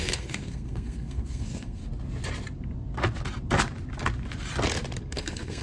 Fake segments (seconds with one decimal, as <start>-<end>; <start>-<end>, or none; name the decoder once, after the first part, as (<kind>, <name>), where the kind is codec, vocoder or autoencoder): 0.0-1.8 (codec, SNAC); 5.0-5.6

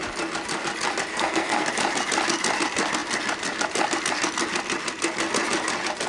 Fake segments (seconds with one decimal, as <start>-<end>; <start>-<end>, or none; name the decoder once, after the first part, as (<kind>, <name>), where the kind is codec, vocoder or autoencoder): 1.1-1.7 (codec, SNAC)

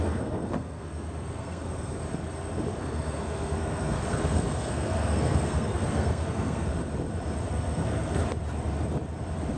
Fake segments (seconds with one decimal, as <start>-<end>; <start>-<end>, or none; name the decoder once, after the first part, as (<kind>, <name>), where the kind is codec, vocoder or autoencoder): 0.0-2.0 (codec, SNAC); 2.7-6.7; 7.5-8.2

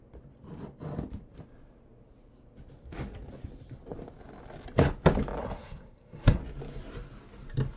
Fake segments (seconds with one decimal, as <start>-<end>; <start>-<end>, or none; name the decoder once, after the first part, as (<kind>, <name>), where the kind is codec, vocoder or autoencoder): 5.4-6.4 (codec, SNAC)

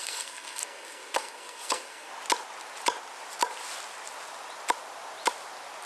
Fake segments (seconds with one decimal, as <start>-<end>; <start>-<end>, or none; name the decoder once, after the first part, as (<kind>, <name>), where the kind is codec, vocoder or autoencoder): 0.0-2.1 (codec, SNAC)

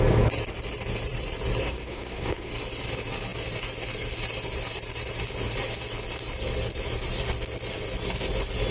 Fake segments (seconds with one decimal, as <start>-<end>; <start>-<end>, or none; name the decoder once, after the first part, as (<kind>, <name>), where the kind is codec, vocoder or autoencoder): 1.6-2.5 (codec, SNAC)

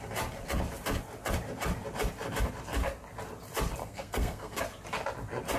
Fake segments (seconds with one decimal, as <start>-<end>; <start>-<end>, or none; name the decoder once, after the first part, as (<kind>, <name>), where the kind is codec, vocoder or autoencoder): 3.8-4.6 (codec, SNAC)